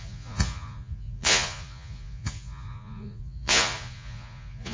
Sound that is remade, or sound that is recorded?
remade